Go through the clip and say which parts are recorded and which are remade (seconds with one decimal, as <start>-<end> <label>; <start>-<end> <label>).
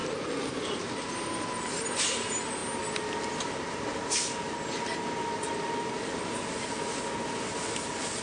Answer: 0.0-8.2 recorded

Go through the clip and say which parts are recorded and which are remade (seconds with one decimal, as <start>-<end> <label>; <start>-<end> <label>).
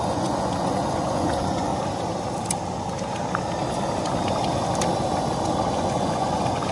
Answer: 0.0-1.7 remade; 1.7-5.7 recorded; 5.7-6.7 remade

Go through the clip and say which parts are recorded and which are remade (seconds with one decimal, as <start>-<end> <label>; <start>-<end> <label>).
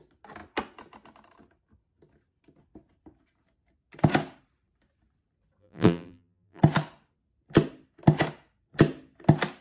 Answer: 0.0-5.6 recorded; 5.6-6.6 remade; 6.6-9.6 recorded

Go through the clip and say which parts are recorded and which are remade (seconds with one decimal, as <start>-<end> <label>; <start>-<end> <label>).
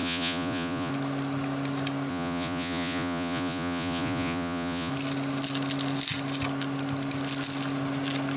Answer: 0.0-0.9 remade; 0.9-2.1 recorded; 2.1-4.9 remade; 4.9-8.4 recorded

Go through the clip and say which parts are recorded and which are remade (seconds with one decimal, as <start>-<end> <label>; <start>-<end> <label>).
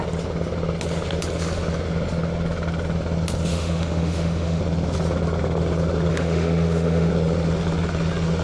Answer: 0.0-3.5 recorded; 3.5-4.6 remade; 4.6-6.1 recorded; 6.1-7.1 remade; 7.1-8.4 recorded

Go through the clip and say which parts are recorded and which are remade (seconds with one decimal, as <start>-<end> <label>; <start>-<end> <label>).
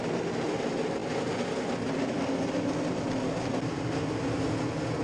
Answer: 0.0-5.0 recorded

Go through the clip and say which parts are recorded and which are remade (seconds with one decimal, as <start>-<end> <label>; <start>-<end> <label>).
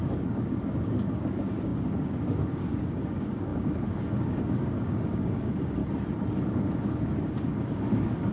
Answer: 0.0-5.8 remade; 5.8-6.4 recorded; 6.4-8.3 remade